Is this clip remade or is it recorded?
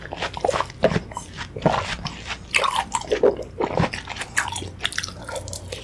recorded